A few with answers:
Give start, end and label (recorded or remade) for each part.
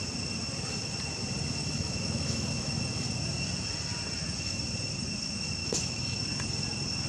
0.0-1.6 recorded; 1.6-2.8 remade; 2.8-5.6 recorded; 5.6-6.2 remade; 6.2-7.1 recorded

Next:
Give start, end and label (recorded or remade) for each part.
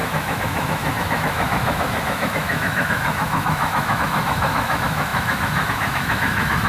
0.0-6.7 remade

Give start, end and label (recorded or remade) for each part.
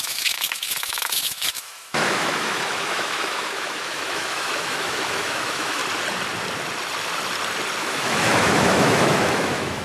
0.0-5.8 remade; 5.8-7.8 recorded; 7.8-9.8 remade